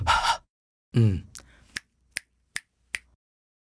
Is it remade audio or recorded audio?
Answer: recorded